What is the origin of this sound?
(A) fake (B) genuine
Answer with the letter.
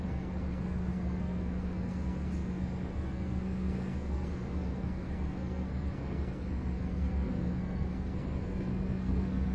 A